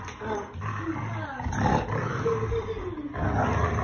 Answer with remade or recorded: recorded